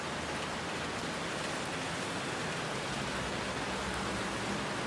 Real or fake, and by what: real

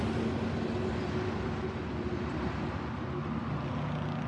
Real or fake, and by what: real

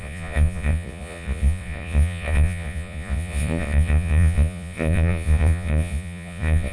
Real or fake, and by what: fake, vocoder, Vocos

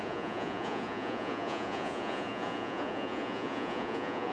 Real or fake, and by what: fake, vocoder, Vocos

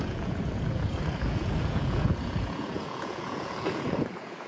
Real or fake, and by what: fake, vocoder, Vocos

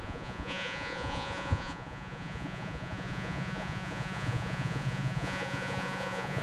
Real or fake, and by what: fake, vocoder, Vocos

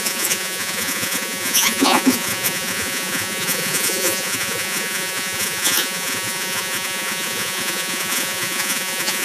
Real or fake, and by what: fake, vocoder, Vocos